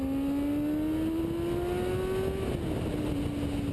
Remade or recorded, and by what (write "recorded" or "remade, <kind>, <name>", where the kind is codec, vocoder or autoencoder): recorded